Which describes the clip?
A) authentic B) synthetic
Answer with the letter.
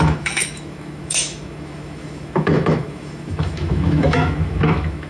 B